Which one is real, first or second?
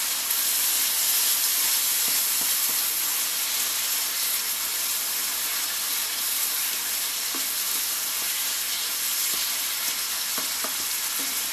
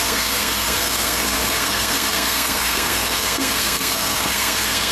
first